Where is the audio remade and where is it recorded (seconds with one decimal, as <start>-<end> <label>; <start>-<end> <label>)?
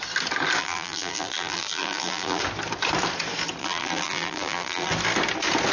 0.0-0.6 recorded; 0.6-2.4 remade; 2.4-3.6 recorded; 3.6-4.9 remade; 4.9-5.7 recorded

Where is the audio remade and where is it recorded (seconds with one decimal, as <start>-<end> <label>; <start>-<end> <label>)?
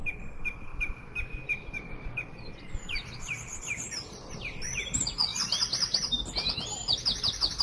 0.0-0.7 recorded; 0.7-4.4 remade; 4.4-5.3 recorded; 5.3-6.1 remade; 6.1-7.6 recorded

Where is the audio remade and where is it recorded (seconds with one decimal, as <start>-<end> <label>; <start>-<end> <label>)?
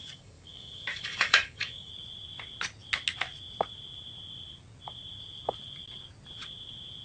0.0-1.9 remade; 1.9-7.0 recorded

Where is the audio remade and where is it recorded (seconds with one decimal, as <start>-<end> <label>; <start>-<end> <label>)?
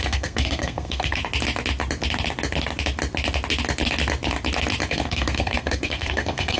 0.0-1.2 remade; 1.2-4.9 recorded; 4.9-6.6 remade